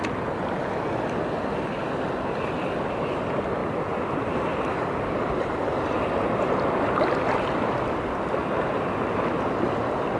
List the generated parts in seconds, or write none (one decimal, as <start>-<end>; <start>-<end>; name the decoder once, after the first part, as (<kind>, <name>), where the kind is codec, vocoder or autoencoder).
none